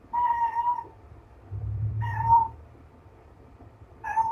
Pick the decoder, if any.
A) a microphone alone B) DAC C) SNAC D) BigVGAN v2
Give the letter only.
D